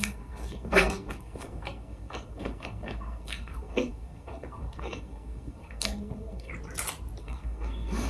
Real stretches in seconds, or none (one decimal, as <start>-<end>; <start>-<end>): 6.5-7.2